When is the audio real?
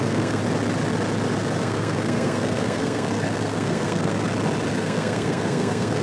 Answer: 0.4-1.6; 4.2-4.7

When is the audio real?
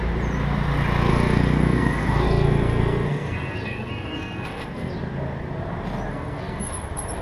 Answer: 0.0-1.1; 4.9-6.1; 6.7-7.2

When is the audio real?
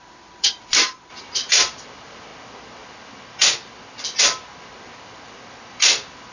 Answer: 2.3-6.3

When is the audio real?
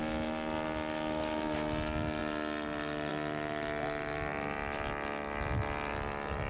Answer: 0.0-6.5